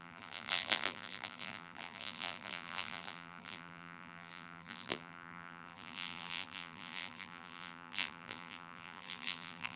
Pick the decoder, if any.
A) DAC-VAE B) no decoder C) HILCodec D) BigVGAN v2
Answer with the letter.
D